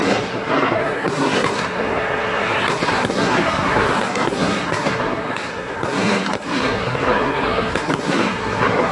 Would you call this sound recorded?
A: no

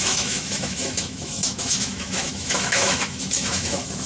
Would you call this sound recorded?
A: no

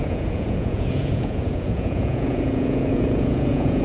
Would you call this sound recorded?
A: no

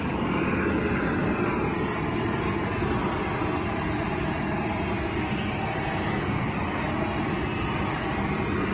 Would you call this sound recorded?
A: yes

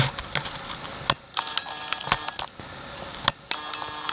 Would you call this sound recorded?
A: yes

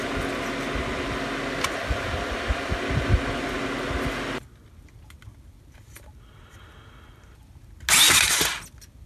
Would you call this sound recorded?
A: yes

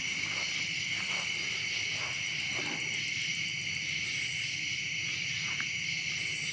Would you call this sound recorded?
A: yes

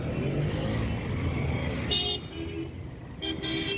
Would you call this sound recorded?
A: yes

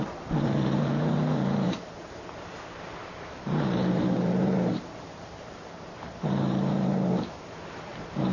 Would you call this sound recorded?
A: no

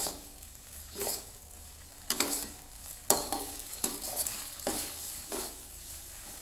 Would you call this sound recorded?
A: no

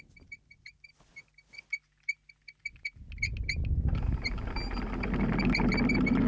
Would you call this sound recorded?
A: yes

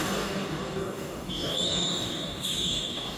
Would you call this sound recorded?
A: no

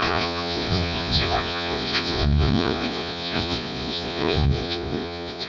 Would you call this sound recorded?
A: no